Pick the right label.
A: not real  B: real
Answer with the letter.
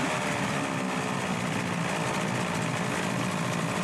B